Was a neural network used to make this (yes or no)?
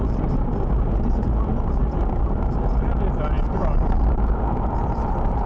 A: no